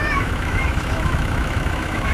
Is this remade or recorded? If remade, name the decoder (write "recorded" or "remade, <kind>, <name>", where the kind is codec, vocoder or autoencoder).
remade, autoencoder, DAC-VAE